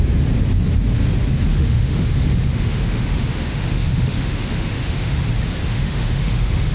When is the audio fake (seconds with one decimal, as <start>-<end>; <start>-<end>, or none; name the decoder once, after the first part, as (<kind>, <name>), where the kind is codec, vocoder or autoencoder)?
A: 1.5-5.1 (autoencoder, DAC-VAE); 5.6-6.7